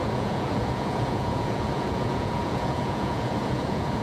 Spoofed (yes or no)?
yes